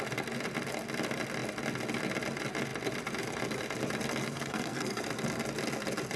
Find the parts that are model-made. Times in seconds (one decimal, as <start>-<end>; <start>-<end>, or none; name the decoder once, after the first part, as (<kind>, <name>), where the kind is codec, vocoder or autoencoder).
4.2-5.0 (codec, SNAC)